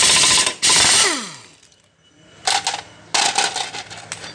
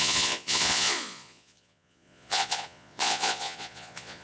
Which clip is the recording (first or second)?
first